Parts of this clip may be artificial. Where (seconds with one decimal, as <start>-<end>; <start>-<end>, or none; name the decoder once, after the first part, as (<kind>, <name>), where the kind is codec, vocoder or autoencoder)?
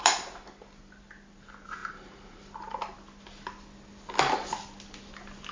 none